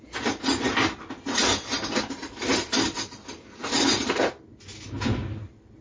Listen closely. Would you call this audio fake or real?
real